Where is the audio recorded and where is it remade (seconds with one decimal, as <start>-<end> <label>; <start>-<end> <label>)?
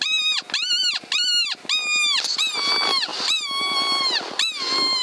0.0-5.0 recorded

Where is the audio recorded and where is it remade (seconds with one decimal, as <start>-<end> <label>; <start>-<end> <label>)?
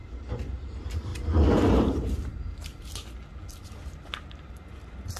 0.0-0.6 recorded; 0.6-1.1 remade; 1.1-1.7 recorded; 1.7-2.7 remade; 2.7-3.6 recorded; 3.6-5.2 remade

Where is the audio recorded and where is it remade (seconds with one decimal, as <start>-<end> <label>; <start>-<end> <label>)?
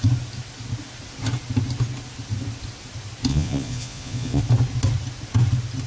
0.0-3.3 recorded; 3.3-4.4 remade; 4.4-5.9 recorded